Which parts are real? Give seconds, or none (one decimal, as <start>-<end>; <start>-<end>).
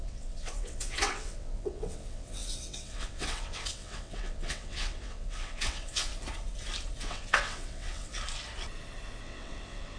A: 6.1-7.0; 8.1-9.2